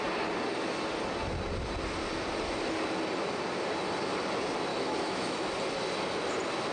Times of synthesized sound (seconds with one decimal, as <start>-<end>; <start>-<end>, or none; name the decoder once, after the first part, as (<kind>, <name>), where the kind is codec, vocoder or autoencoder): 4.7-5.5 (autoencoder, DAC-VAE)